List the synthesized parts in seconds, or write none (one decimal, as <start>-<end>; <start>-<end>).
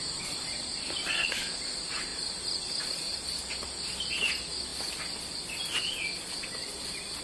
none